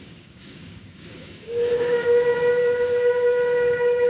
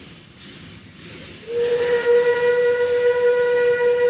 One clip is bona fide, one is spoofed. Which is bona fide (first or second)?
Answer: second